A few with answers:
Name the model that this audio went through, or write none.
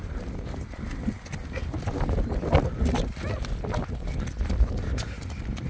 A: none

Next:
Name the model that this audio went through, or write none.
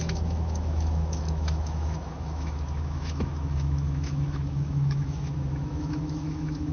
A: autoencoder, DAC-VAE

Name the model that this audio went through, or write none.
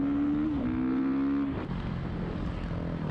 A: none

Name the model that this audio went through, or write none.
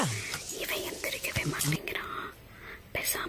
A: none